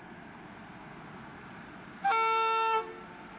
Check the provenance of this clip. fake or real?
real